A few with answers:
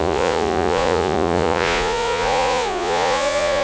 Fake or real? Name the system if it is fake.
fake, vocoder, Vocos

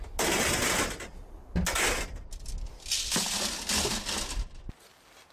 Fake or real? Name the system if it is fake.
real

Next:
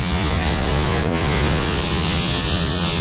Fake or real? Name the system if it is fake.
fake, vocoder, Vocos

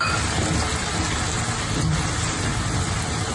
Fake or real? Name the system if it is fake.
real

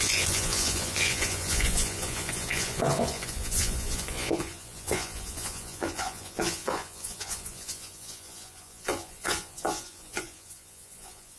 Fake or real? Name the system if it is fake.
fake, vocoder, Vocos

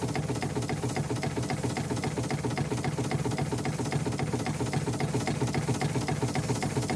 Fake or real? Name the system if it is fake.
real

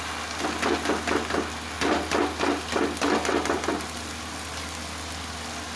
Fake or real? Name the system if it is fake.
real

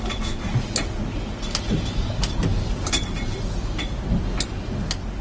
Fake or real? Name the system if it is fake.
real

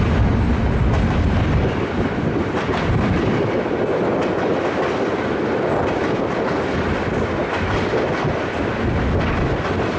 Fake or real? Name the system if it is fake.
real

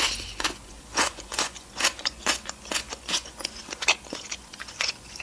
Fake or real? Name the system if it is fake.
fake, vocoder, Vocos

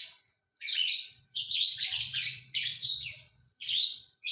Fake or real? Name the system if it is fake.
fake, vocoder, Vocos